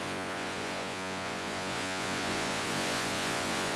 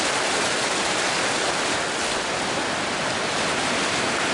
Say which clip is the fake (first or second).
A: first